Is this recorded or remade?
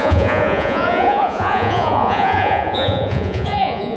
remade